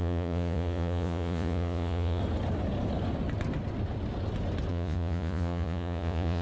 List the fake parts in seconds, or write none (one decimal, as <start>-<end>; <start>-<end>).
0.0-2.2; 4.7-6.4